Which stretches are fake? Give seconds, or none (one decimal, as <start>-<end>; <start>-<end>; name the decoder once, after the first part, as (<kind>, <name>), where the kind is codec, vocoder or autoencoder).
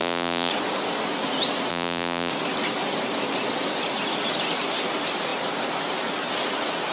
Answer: 0.0-0.5 (vocoder, BigVGAN v2); 1.7-2.3